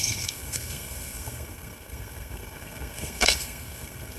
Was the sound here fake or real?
fake